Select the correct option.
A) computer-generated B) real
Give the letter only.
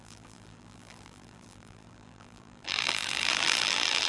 A